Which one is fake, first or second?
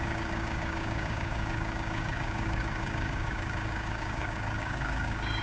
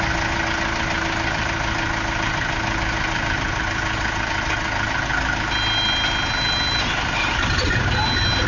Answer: first